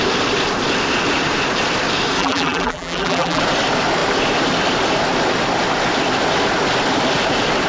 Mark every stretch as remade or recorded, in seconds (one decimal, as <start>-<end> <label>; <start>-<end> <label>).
0.0-2.2 recorded; 2.2-3.4 remade; 3.4-7.7 recorded